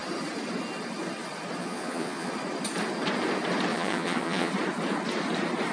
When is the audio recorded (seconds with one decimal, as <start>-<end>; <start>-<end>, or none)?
0.0-1.6; 2.3-3.7; 4.5-5.7